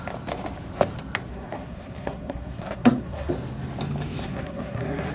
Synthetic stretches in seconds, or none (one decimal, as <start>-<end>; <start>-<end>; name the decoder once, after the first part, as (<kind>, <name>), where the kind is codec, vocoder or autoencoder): 1.3-3.3 (codec, SNAC); 4.2-5.1

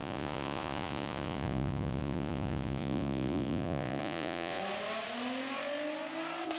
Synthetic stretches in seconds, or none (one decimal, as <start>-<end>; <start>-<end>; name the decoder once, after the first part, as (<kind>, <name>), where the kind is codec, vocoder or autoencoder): 0.0-4.6 (vocoder, Vocos)

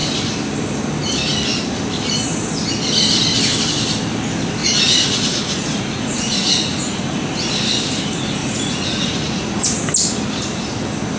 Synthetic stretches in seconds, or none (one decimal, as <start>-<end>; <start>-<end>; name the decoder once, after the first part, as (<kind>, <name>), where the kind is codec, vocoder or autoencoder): 4.6-7.2 (vocoder, Vocos); 8.4-9.8

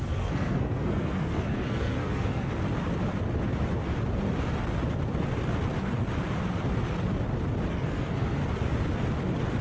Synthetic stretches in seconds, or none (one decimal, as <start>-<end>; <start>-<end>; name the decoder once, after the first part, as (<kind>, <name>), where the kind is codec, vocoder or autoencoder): 0.0-2.5 (codec, SNAC); 7.7-8.4

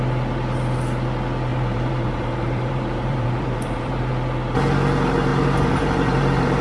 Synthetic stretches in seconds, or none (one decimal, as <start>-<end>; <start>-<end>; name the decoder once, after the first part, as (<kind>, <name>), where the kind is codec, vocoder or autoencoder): 1.5-4.1 (vocoder, BigVGAN v2); 5.3-6.6

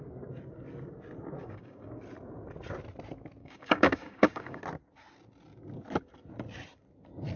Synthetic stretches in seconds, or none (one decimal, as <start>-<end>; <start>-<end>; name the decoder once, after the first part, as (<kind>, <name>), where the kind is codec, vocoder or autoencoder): 1.4-2.0 (codec, DAC); 3.4-4.6

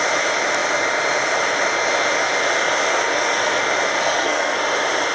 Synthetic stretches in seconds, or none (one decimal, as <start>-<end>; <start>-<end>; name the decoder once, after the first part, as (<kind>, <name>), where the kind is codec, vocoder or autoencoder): 2.9-3.6 (codec, SNAC); 4.0-4.6